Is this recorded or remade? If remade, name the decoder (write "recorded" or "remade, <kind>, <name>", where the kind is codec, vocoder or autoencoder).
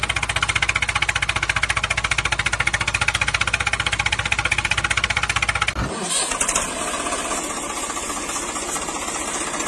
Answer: recorded